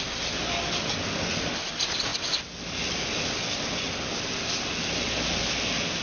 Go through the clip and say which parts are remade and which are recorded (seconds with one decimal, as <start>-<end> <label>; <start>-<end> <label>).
0.0-6.0 recorded